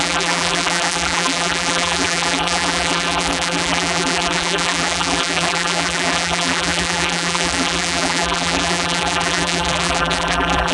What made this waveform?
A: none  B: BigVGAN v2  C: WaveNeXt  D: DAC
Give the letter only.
B